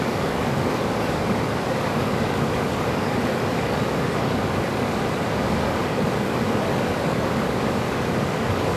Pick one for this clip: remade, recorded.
remade